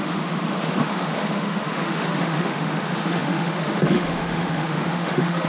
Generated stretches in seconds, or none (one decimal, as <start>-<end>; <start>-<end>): 0.0-5.5